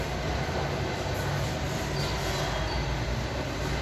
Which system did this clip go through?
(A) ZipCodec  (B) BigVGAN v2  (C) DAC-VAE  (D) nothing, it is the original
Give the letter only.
D